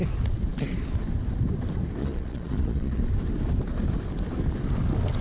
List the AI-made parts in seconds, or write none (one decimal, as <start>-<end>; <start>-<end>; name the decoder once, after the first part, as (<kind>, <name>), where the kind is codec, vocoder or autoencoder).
2.0-3.0 (vocoder, Vocos)